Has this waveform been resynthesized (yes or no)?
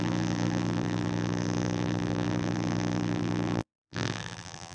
yes